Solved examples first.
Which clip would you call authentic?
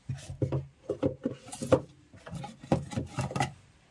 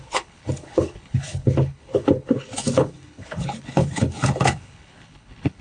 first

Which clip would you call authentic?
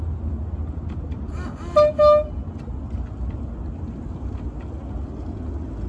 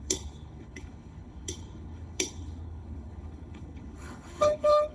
first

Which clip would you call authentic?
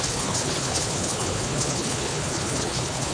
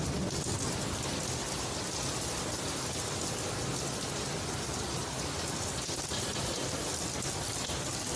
second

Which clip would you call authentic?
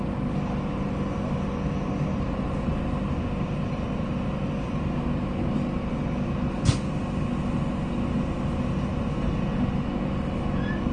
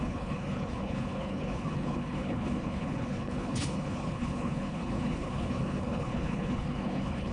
first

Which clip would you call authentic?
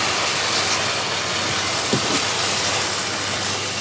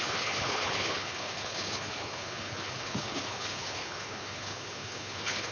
first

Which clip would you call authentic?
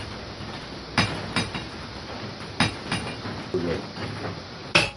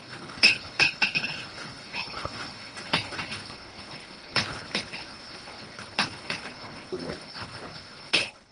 first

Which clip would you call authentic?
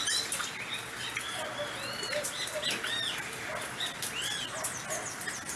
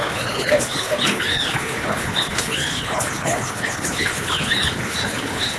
first